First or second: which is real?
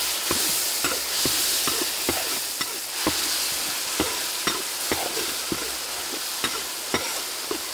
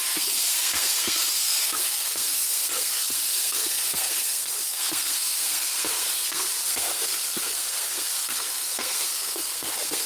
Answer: first